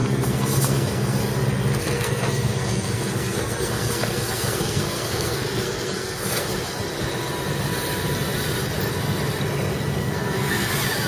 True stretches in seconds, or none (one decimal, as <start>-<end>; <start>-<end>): 1.2-1.8; 6.6-10.0; 10.7-11.1